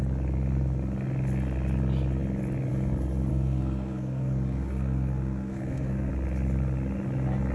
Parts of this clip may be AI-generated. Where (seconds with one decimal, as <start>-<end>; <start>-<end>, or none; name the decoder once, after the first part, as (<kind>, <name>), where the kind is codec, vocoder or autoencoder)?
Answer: 3.3-6.1 (codec, SNAC)